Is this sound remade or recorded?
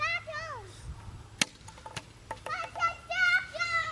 recorded